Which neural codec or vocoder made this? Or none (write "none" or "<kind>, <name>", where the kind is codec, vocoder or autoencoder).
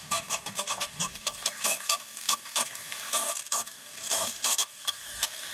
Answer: codec, DAC